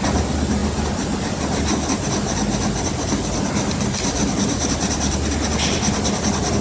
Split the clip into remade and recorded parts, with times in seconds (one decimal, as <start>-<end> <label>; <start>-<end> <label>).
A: 0.0-6.6 recorded